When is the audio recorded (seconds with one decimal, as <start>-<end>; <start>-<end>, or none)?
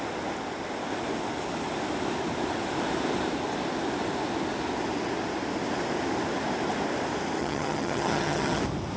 0.0-7.4; 8.6-9.0